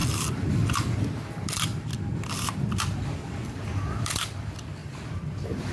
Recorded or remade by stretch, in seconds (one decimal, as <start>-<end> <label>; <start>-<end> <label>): 0.0-5.7 remade